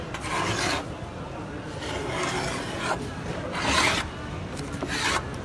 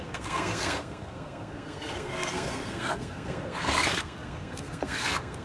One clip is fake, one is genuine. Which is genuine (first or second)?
first